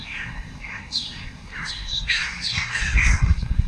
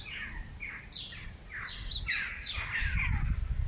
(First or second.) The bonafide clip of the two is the second